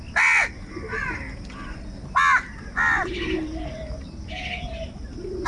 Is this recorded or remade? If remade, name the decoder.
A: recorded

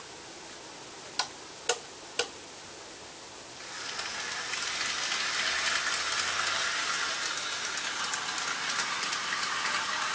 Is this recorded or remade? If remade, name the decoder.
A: recorded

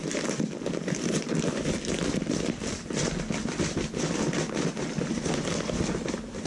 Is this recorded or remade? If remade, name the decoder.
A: recorded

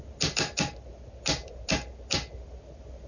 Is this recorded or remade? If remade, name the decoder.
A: recorded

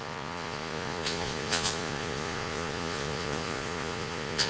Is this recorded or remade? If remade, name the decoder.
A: remade, vocoder, Vocos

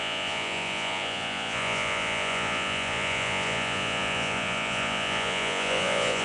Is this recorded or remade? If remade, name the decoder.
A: remade, vocoder, Vocos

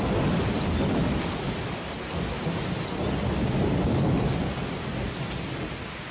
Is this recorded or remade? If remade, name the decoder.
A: recorded